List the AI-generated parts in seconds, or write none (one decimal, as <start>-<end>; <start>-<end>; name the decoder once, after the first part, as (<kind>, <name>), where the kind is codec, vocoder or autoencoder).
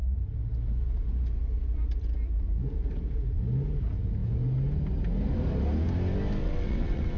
6.4-7.2 (vocoder, WaveNeXt)